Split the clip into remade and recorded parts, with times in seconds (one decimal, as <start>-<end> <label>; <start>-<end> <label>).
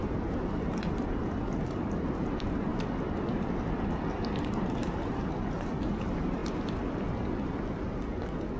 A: 0.0-2.7 remade; 2.7-4.4 recorded; 4.4-6.4 remade; 6.4-8.6 recorded